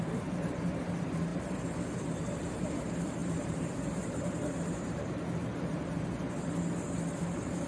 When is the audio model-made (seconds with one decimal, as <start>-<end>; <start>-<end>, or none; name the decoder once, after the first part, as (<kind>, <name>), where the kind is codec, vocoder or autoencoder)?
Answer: 0.0-1.3 (vocoder, BigVGAN v2); 2.0-5.4; 6.7-7.7